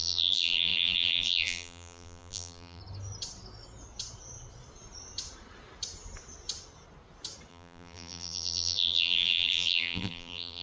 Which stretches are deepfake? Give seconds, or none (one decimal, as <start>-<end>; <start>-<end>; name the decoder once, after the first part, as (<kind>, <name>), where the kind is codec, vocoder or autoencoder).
0.0-2.8 (vocoder, BigVGAN v2); 7.5-10.6